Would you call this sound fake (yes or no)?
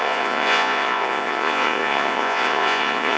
yes